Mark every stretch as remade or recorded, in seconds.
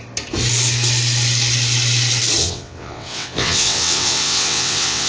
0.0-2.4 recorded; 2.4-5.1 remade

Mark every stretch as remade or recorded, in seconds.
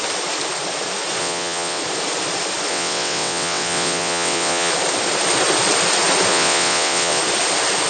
0.0-1.2 recorded; 1.2-1.8 remade; 1.8-2.7 recorded; 2.7-4.7 remade; 4.7-6.3 recorded; 6.3-7.2 remade; 7.2-7.9 recorded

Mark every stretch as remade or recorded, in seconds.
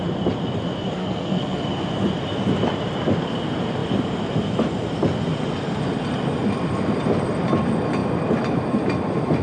0.0-1.0 recorded; 1.0-1.6 remade; 1.6-9.4 recorded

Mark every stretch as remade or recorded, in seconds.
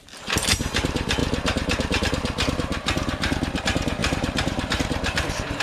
0.0-1.2 remade; 1.2-3.6 recorded; 3.6-5.6 remade